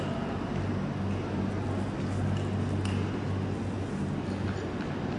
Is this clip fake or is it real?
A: real